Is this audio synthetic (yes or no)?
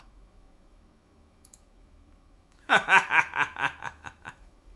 yes